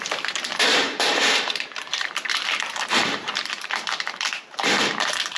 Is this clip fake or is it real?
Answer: fake